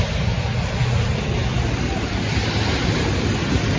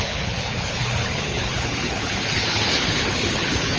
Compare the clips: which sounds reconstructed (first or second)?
second